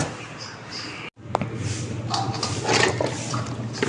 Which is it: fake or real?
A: real